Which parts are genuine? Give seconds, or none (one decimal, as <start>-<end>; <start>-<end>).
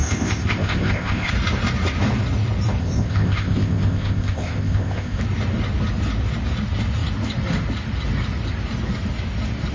1.3-2.8; 5.2-9.7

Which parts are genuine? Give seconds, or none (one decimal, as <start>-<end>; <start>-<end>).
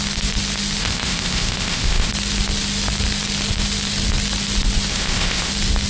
0.0-0.8; 2.1-4.9; 5.5-5.9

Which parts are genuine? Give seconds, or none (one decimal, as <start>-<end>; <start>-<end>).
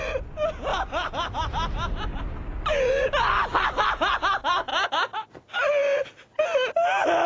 0.0-7.3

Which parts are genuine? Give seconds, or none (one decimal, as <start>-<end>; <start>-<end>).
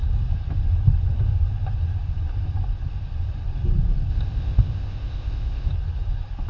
0.0-4.1; 5.7-6.5